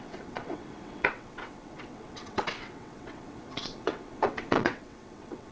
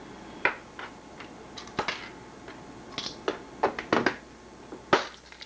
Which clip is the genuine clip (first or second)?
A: second